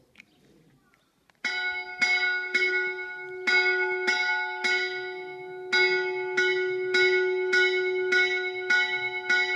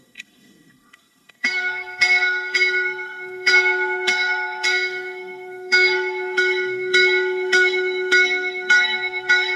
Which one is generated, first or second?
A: second